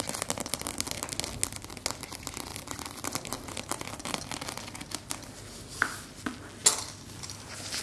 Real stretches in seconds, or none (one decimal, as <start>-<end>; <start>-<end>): 0.0-7.8